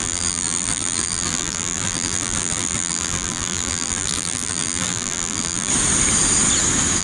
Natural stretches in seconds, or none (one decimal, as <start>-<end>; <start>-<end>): 5.7-7.0